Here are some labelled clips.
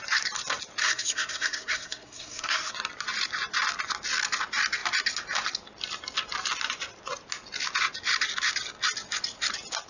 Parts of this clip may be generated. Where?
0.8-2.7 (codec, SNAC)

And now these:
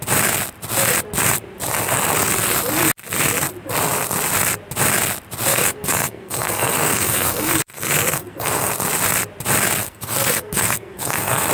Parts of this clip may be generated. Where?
5.5-8.7 (codec, SNAC); 9.8-11.5

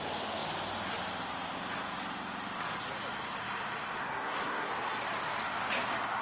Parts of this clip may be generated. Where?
4.0-4.7 (codec, SNAC)

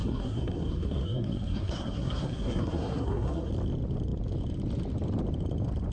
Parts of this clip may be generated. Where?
0.0-3.5 (codec, SNAC)